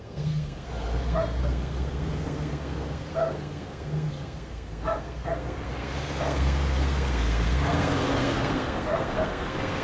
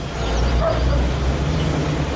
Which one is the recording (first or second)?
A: second